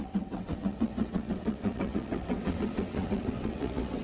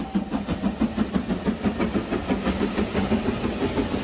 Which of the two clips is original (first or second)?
second